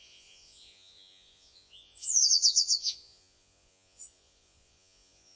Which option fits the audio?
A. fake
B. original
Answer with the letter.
A